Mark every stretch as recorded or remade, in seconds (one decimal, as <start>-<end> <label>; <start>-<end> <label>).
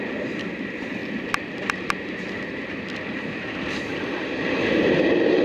0.0-5.4 recorded